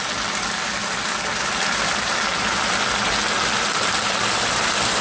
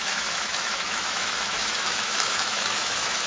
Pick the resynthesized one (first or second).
second